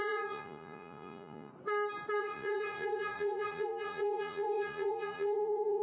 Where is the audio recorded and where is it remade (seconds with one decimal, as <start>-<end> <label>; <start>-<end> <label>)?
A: 0.0-1.5 remade; 1.5-2.2 recorded; 2.2-5.8 remade